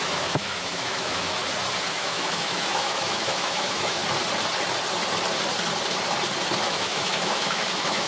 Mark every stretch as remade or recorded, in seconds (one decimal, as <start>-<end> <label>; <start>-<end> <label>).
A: 0.0-1.4 remade; 1.4-1.9 recorded; 1.9-4.0 remade; 4.0-6.6 recorded; 6.6-8.1 remade